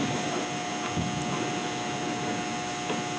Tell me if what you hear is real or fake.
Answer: real